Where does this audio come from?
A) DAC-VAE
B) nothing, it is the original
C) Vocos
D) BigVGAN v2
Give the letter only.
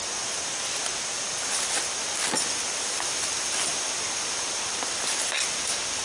B